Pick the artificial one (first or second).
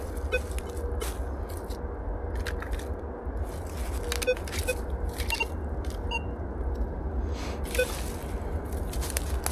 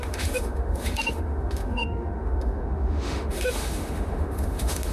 second